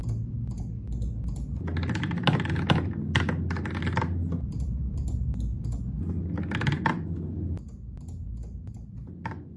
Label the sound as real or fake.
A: real